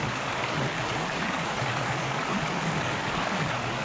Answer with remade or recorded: remade